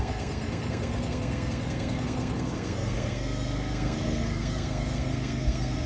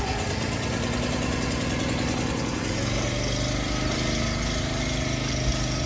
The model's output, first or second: first